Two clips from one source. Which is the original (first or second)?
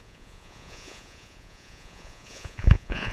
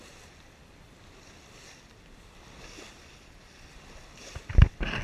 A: second